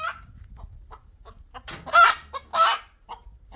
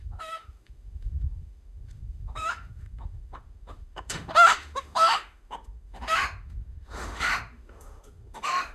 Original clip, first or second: first